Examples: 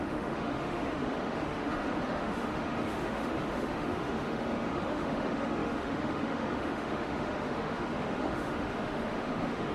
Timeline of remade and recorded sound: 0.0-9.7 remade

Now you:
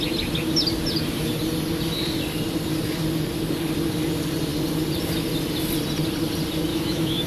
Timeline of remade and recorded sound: 0.0-6.7 recorded; 6.7-7.3 remade

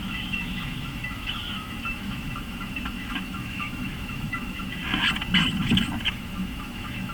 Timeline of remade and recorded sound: 0.0-4.8 remade; 4.8-6.1 recorded; 6.1-7.1 remade